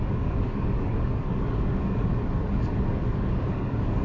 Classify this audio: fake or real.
fake